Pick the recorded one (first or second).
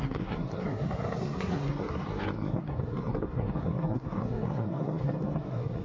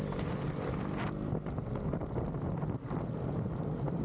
second